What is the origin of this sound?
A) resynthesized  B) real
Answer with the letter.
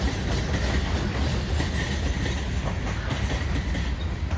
B